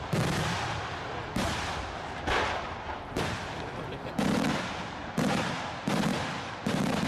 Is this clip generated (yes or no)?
no